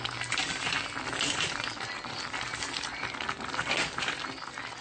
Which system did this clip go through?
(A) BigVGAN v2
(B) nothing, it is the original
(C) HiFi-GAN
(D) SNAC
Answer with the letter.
B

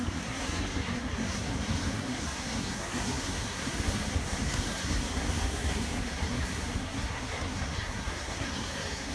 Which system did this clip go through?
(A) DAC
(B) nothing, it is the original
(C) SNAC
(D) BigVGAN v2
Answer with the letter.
C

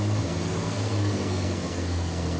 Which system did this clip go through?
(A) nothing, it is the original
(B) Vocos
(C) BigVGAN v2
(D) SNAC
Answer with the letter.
D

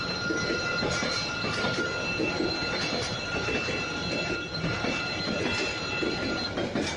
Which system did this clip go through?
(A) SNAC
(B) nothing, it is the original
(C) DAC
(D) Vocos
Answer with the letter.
B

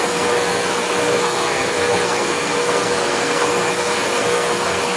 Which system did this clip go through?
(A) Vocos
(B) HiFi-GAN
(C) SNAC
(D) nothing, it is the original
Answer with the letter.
C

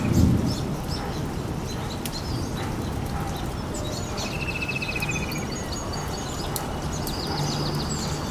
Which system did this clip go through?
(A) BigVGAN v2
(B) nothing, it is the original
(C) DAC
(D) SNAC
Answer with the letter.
B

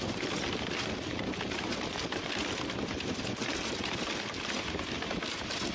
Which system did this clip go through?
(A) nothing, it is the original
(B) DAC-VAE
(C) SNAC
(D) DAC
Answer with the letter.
A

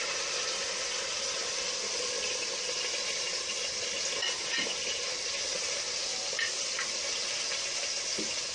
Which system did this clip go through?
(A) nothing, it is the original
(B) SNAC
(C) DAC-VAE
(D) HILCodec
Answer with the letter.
A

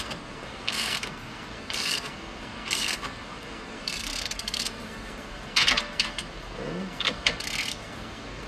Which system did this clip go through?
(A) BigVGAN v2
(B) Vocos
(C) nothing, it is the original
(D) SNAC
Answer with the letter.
D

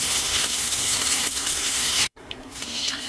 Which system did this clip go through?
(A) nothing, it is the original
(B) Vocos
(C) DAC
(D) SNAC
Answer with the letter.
D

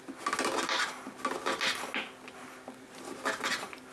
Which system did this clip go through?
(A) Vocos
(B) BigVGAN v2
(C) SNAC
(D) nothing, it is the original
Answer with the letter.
D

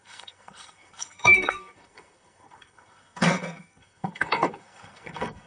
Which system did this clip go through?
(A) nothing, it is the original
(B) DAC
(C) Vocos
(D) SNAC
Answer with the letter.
D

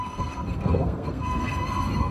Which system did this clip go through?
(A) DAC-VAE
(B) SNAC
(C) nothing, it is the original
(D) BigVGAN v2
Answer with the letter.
B